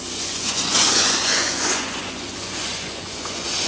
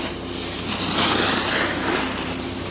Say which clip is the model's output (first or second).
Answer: first